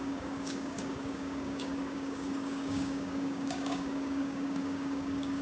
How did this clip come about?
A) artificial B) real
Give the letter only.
A